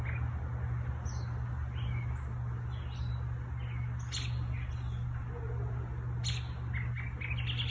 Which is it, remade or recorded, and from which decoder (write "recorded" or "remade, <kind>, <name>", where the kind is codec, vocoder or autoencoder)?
recorded